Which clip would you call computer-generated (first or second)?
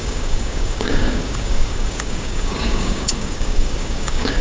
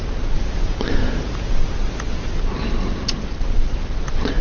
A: first